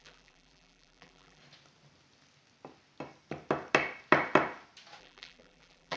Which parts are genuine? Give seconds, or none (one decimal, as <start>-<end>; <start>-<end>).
1.4-5.0